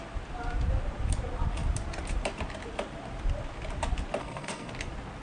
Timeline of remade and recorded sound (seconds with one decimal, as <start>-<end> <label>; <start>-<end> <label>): 0.0-4.2 recorded; 4.2-4.7 remade; 4.7-5.2 recorded